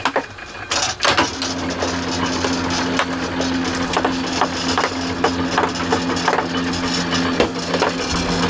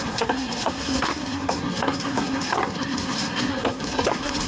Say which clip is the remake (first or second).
second